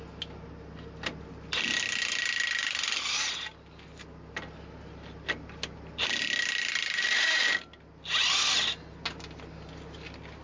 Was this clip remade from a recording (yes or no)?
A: no